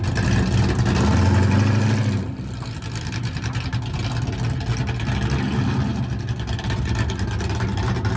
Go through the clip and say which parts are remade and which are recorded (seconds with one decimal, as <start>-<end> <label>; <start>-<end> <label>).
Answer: 0.0-8.2 recorded